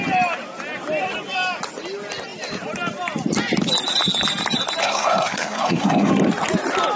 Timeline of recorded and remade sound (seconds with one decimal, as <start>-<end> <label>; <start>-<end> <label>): 0.0-4.8 recorded; 4.8-6.1 remade; 6.1-7.0 recorded